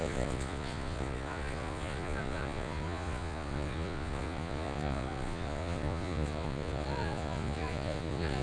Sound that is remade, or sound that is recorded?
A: remade